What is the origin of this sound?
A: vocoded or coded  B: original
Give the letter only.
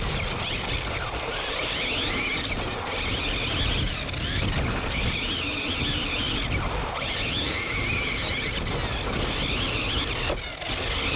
B